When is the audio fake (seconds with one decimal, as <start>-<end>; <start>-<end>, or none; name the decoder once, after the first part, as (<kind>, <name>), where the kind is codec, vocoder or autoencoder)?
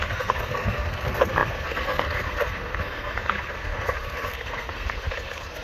0.0-5.6 (codec, SNAC)